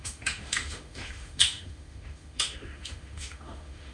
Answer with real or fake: fake